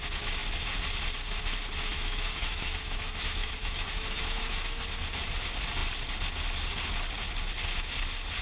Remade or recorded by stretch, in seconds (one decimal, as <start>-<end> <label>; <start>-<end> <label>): 0.0-1.9 recorded; 1.9-4.8 remade; 4.8-8.4 recorded